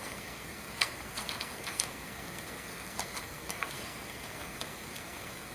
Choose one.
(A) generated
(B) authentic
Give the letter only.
A